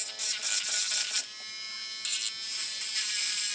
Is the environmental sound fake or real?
real